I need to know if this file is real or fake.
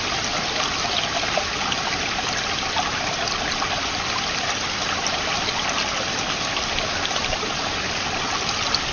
real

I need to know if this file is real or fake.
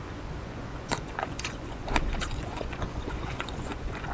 fake